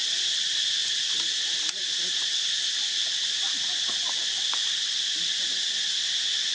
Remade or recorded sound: recorded